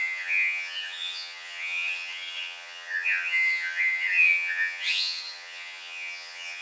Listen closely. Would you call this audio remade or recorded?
remade